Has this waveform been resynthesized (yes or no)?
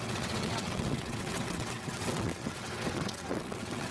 yes